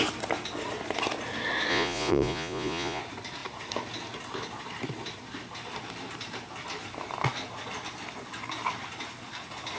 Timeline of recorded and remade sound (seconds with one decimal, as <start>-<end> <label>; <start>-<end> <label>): 0.0-1.7 recorded; 1.7-3.0 remade; 3.0-9.8 recorded